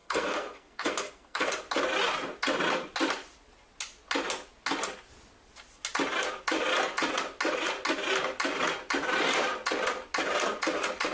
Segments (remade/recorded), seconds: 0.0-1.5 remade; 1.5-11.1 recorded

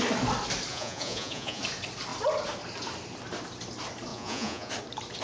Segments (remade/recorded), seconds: 0.0-0.7 recorded; 0.7-1.6 remade; 1.6-4.1 recorded; 4.1-4.7 remade; 4.7-5.2 recorded

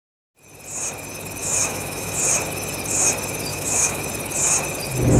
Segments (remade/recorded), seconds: 0.0-1.4 recorded; 1.4-2.2 remade; 2.2-3.5 recorded; 3.5-4.0 remade; 4.0-5.2 recorded

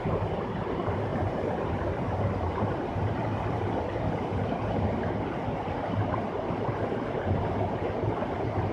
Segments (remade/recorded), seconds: 0.0-8.7 recorded

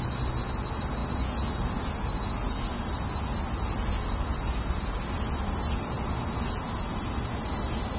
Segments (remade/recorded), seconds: 0.0-8.0 recorded

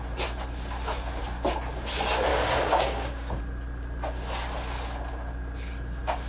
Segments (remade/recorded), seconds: 0.0-2.3 recorded; 2.3-3.4 remade; 3.4-6.3 recorded

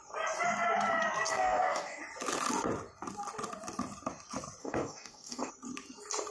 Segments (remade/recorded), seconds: 0.0-1.3 recorded; 1.3-2.0 remade; 2.0-4.6 recorded; 4.6-5.5 remade; 5.5-6.3 recorded